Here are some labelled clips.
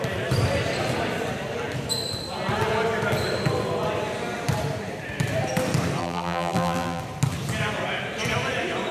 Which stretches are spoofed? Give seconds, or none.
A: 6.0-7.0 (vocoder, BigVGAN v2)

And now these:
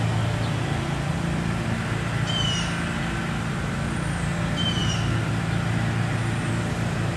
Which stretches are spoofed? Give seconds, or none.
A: none

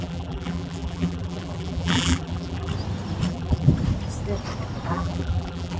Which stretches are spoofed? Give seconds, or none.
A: 0.0-2.7 (vocoder, BigVGAN v2); 3.3-3.7; 4.9-5.8

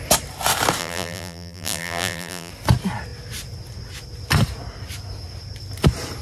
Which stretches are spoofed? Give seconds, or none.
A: 0.8-2.5 (vocoder, BigVGAN v2)